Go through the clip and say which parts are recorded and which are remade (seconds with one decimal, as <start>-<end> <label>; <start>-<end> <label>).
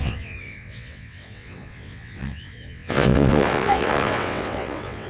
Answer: 0.0-5.1 remade